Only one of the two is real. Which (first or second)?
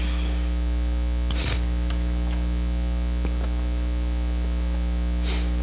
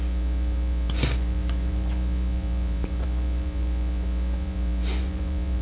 first